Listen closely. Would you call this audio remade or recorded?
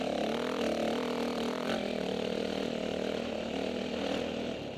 recorded